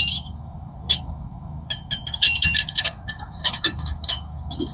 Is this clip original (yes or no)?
no